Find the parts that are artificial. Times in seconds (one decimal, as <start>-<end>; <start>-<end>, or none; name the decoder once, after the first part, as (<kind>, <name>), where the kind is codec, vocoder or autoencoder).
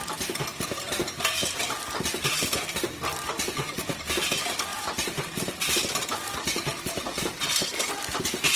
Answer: 4.7-7.5 (vocoder, BigVGAN v2)